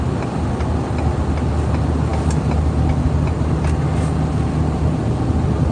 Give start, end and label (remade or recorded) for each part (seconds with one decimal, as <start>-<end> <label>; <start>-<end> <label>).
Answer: 0.0-5.7 recorded